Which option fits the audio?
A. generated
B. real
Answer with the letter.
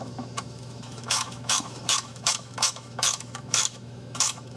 A